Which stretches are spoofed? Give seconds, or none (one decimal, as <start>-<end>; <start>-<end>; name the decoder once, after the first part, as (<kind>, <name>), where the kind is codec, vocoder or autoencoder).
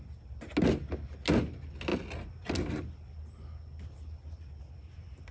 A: none